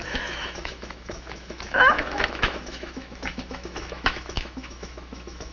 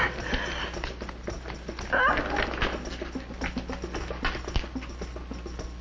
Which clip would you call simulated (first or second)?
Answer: first